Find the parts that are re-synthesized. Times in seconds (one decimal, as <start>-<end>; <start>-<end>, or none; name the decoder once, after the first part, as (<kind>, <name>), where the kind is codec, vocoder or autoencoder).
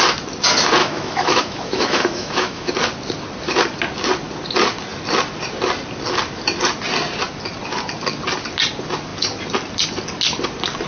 0.8-2.7 (autoencoder, DAC-VAE)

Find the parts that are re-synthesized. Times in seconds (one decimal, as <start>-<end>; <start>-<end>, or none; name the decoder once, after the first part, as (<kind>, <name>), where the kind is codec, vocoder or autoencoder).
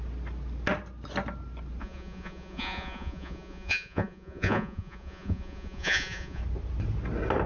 1.8-6.4 (vocoder, Vocos)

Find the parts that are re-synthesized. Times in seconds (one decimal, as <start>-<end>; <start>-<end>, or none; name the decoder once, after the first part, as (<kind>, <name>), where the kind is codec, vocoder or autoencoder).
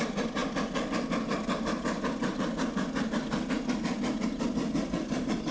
none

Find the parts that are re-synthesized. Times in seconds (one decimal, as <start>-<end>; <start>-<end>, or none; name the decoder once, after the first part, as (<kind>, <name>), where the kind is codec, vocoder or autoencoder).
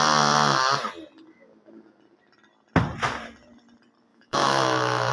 4.1-5.1 (autoencoder, DAC-VAE)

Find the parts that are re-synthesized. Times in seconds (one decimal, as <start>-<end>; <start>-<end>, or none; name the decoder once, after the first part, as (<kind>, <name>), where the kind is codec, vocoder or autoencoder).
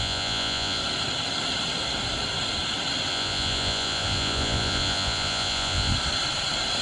0.0-0.8 (vocoder, Vocos); 3.1-5.9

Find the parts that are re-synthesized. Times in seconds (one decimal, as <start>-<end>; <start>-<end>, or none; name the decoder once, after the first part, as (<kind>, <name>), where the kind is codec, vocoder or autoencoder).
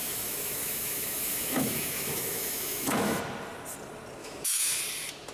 0.0-3.2 (autoencoder, DAC-VAE); 4.2-4.8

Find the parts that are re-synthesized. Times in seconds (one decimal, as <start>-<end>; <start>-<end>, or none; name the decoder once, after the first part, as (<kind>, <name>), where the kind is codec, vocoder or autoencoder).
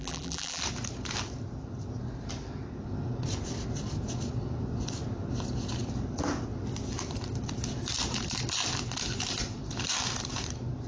0.0-0.6 (vocoder, BigVGAN v2)